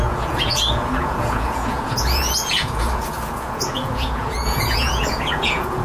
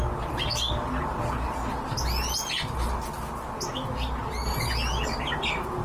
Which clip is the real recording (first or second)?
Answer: second